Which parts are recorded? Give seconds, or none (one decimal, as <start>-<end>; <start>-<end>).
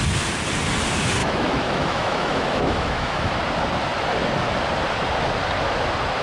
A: 0.0-1.2; 3.3-6.2